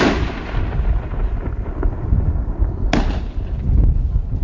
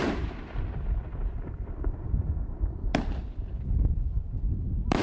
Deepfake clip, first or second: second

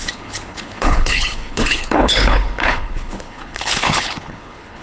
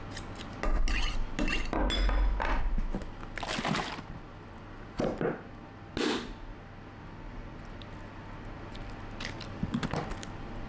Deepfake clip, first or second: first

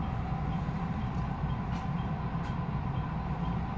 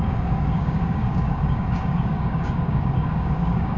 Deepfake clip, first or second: second